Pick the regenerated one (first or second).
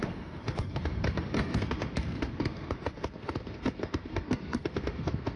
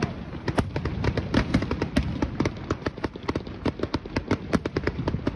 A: first